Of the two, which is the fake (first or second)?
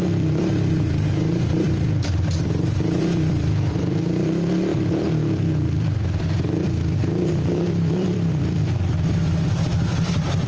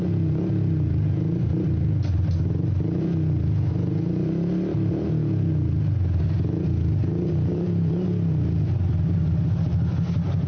first